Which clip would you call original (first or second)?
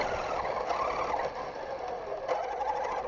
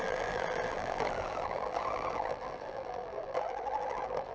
first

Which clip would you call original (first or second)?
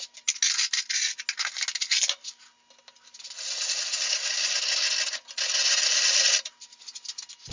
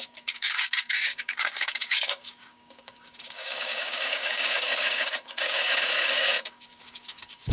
first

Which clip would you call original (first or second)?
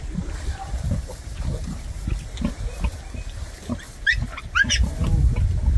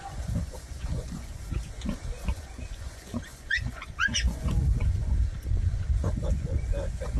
first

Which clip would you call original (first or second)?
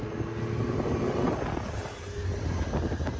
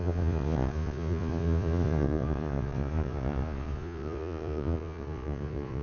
first